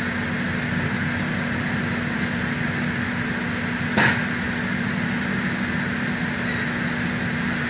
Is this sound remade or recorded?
recorded